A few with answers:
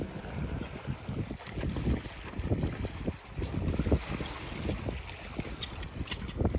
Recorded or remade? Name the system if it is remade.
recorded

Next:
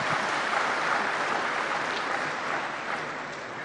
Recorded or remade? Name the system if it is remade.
recorded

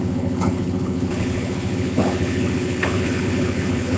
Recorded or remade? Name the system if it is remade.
remade, codec, HILCodec